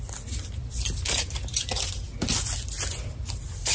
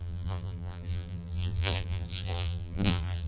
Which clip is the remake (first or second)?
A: second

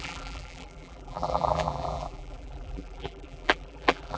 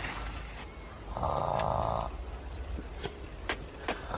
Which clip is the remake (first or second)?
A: first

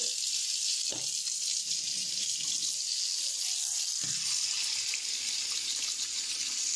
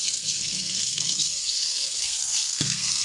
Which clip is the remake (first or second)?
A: second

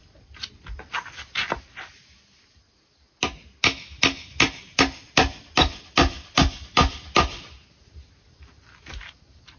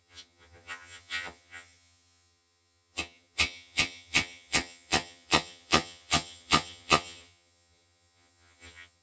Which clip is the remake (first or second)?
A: second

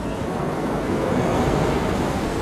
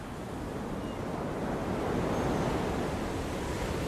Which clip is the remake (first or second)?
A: first